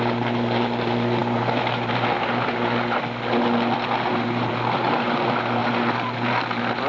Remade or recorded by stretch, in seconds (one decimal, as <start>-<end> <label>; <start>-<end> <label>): 0.0-6.9 recorded